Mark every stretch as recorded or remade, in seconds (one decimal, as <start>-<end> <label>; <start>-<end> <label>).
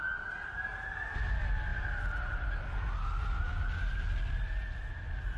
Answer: 0.0-5.4 recorded